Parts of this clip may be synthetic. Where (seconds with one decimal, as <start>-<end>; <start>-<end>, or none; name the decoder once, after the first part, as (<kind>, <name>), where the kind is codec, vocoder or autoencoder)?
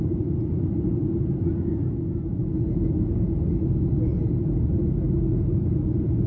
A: none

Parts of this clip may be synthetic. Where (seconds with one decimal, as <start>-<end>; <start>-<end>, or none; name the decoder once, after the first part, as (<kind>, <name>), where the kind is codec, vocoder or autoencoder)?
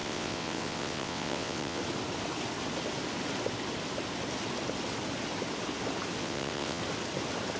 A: 0.0-1.8 (vocoder, WaveNeXt); 6.2-6.8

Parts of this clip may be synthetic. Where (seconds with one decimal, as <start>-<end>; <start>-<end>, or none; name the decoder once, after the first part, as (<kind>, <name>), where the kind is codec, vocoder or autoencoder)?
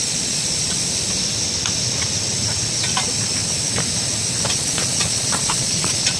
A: 0.0-0.8 (vocoder, Vocos); 4.5-6.2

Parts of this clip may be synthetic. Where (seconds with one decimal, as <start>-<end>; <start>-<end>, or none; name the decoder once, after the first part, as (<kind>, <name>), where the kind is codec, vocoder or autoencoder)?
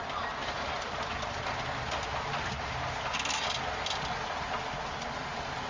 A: none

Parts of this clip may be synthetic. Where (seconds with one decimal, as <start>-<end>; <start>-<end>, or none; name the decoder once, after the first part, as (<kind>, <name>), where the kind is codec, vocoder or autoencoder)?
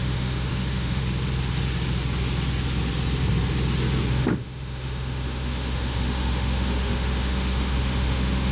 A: 0.0-1.0 (autoencoder, DAC-VAE); 4.1-8.5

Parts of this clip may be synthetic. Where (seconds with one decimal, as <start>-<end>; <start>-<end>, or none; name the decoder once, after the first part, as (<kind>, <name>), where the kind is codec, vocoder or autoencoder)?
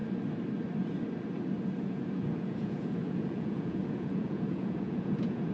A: 1.8-5.5 (vocoder, Vocos)